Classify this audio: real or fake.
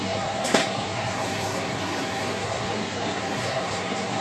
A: fake